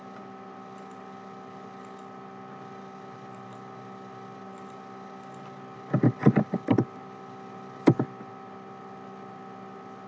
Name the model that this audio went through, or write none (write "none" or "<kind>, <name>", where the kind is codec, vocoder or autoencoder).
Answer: none